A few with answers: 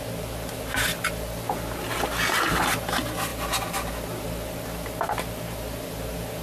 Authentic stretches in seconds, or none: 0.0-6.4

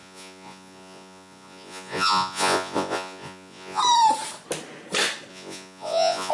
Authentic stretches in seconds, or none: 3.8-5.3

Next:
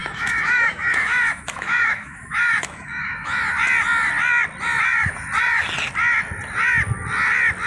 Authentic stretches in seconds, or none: 3.4-7.7

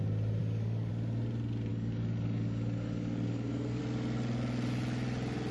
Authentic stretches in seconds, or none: 0.0-0.4; 0.9-1.7; 3.8-5.5

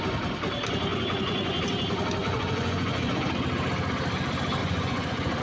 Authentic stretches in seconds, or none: 0.0-0.9; 1.6-2.2; 3.3-4.6